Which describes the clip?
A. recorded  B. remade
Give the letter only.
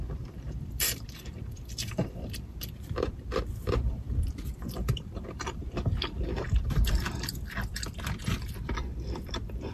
B